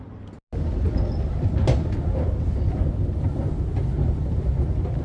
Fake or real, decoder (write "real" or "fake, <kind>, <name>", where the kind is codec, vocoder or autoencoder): real